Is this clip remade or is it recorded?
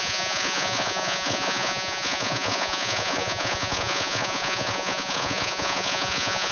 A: remade